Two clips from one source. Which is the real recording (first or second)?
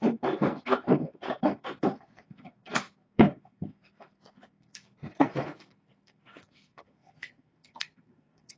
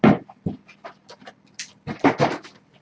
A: second